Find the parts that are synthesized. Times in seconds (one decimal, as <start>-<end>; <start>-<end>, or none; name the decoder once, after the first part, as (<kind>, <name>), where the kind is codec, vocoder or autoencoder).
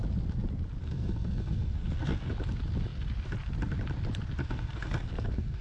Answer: 0.8-2.3 (codec, SNAC); 4.4-5.6